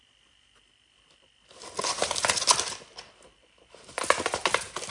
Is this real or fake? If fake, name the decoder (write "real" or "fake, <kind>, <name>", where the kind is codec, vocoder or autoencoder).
real